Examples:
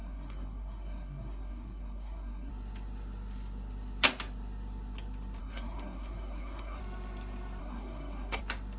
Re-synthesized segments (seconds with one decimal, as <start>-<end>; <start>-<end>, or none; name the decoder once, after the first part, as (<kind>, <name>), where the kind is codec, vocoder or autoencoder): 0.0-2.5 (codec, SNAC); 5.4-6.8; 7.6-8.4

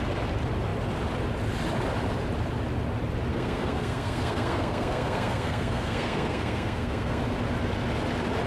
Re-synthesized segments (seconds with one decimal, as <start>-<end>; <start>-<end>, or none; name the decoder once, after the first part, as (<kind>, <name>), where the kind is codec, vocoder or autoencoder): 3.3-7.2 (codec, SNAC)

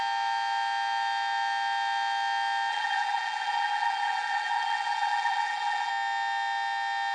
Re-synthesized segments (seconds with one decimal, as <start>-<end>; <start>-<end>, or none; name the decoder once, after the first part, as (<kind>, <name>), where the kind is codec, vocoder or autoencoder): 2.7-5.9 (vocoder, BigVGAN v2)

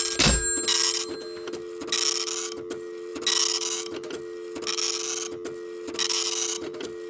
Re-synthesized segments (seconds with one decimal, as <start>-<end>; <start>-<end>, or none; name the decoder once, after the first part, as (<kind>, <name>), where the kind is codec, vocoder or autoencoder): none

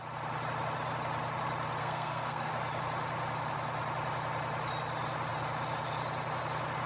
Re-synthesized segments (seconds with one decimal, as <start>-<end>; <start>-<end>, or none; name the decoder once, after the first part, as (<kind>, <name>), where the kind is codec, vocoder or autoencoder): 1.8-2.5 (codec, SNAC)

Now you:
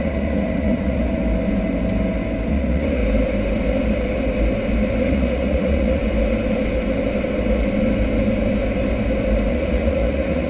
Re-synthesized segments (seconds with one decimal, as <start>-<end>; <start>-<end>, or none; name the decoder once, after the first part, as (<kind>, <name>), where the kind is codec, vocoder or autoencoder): 0.0-1.2 (vocoder, Vocos); 2.5-3.0; 5.0-6.0; 9.5-10.5

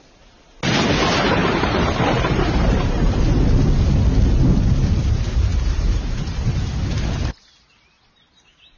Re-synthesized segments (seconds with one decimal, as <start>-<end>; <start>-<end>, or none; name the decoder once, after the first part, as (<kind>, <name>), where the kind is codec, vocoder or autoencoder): 1.4-3.2 (vocoder, BigVGAN v2); 5.5-6.8